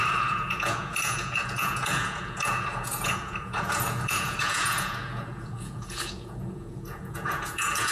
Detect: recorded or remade remade